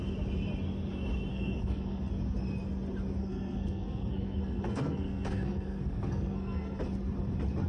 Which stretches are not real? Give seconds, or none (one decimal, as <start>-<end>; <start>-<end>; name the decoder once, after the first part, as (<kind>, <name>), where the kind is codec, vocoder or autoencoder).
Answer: 1.3-2.1 (codec, SNAC); 3.2-6.8